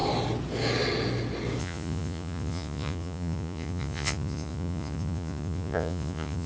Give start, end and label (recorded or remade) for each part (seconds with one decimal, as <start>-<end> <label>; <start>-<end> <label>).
0.0-1.6 recorded; 1.6-6.5 remade